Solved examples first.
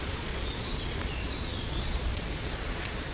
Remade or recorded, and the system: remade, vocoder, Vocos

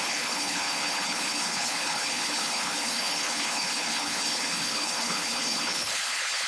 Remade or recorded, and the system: remade, codec, HILCodec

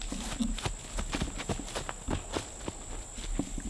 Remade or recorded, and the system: recorded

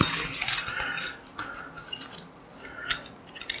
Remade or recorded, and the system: recorded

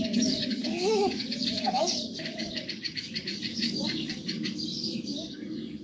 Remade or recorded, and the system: remade, codec, DAC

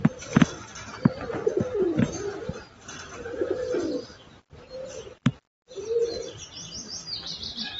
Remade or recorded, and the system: recorded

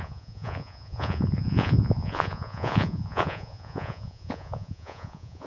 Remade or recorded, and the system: remade, vocoder, Vocos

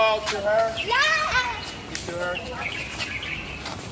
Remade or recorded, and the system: recorded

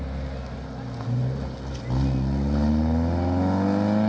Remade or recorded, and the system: recorded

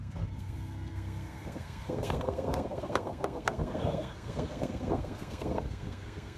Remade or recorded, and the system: remade, codec, SNAC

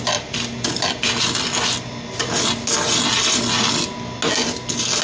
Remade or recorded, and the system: recorded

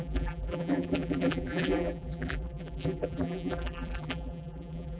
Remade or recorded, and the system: remade, vocoder, BigVGAN v2